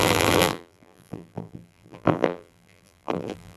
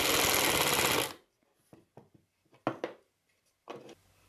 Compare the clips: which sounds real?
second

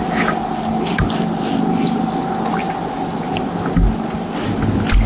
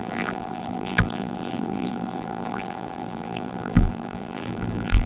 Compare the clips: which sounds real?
first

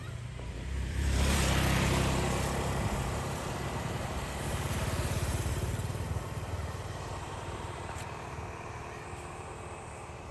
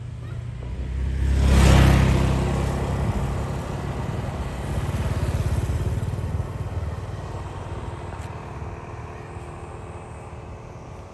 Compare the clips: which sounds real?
second